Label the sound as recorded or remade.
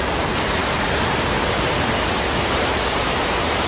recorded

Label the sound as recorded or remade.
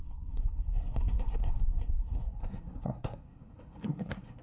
remade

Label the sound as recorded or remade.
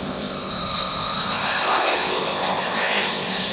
remade